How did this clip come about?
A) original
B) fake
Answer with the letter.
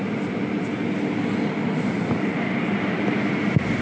A